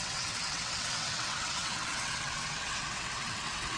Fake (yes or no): yes